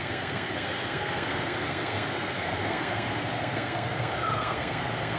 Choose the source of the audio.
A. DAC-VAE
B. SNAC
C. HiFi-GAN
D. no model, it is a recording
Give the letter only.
B